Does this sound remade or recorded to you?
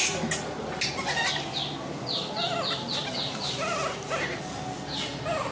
recorded